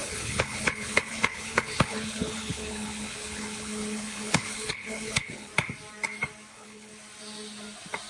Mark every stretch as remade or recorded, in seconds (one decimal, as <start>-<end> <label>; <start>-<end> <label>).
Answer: 0.0-5.5 remade; 5.5-6.5 recorded; 6.5-6.9 remade; 6.9-8.1 recorded